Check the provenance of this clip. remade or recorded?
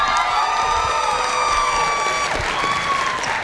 recorded